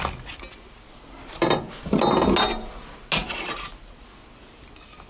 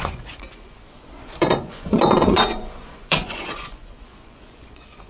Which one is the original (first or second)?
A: first